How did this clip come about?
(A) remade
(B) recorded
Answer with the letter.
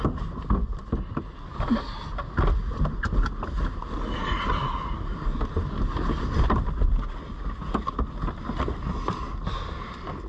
B